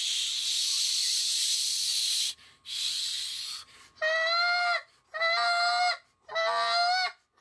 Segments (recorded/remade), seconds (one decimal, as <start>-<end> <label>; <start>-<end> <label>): 0.0-7.4 recorded